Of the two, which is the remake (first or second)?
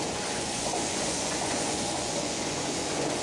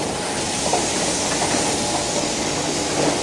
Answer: first